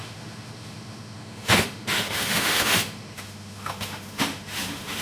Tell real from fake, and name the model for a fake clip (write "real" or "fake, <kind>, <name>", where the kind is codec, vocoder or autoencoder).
fake, autoencoder, DAC-VAE